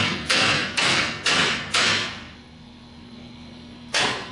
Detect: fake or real fake